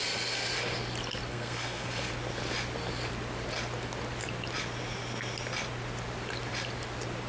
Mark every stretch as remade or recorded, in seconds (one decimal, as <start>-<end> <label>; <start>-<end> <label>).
0.0-1.3 recorded; 1.3-2.1 remade; 2.1-7.3 recorded